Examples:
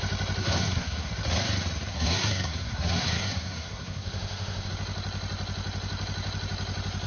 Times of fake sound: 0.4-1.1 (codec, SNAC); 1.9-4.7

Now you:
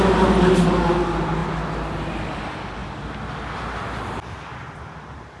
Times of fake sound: none